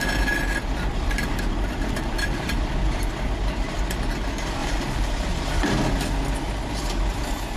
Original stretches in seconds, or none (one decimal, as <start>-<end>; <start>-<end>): 0.0-0.9; 2.5-4.6; 5.7-7.6